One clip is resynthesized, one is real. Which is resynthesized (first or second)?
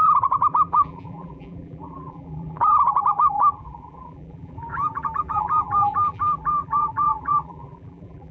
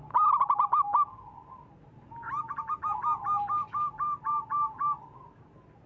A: first